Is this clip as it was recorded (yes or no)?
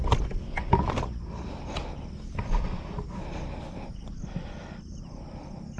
yes